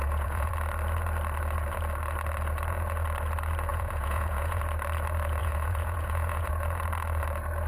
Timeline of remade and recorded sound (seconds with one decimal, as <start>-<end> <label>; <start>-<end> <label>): 0.0-0.5 remade; 0.5-3.7 recorded; 3.7-4.6 remade; 4.6-5.4 recorded; 5.4-6.5 remade; 6.5-7.7 recorded